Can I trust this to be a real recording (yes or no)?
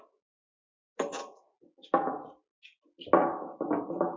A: yes